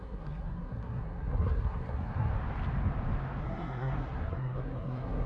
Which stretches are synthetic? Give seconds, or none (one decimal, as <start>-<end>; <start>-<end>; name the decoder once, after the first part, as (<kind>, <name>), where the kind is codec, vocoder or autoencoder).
0.0-2.3 (codec, SNAC); 3.4-5.3